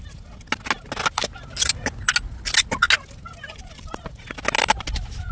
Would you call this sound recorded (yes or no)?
yes